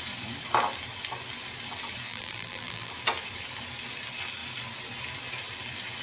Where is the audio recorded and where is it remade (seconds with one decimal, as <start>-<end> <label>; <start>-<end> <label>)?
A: 0.0-2.1 recorded; 2.1-2.9 remade; 2.9-6.0 recorded